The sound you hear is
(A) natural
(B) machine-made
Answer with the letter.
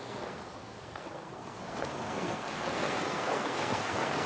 B